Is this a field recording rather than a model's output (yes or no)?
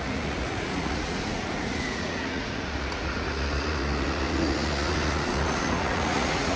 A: no